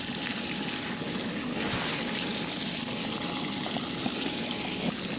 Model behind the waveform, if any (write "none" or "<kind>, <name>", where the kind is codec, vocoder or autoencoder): none